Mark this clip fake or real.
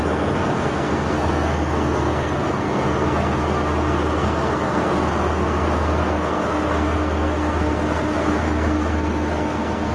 fake